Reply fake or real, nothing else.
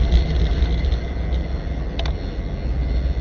real